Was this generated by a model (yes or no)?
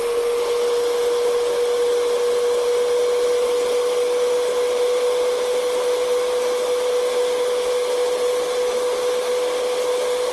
no